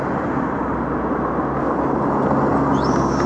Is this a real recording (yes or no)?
yes